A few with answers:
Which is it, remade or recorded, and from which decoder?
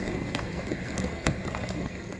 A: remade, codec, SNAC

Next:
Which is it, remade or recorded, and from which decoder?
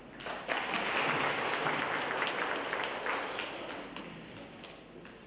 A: recorded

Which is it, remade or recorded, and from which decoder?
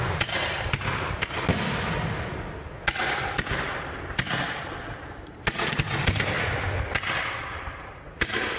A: recorded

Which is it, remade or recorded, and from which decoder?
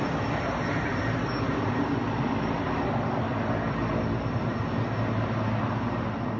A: recorded